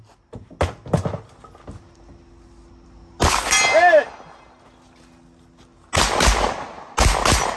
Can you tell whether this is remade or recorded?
recorded